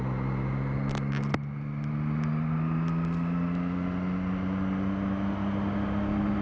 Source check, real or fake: real